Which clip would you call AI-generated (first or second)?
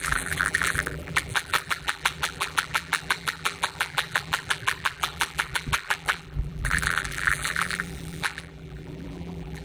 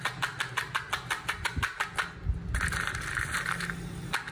first